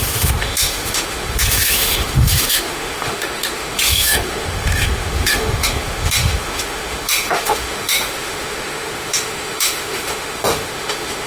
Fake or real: fake